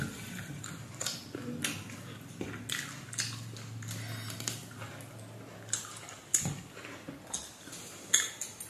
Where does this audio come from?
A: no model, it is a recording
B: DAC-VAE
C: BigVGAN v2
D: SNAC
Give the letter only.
A